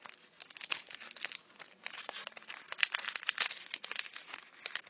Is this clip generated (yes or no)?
no